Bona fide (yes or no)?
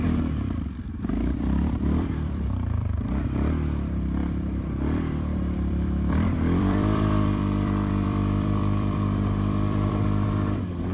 no